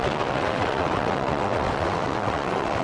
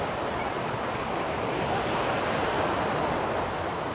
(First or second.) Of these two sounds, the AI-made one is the first